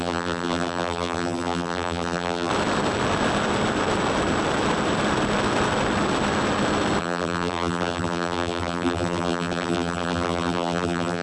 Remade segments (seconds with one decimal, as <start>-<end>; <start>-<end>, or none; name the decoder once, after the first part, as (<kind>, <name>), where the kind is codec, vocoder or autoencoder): 0.0-2.5 (vocoder, BigVGAN v2); 7.0-11.2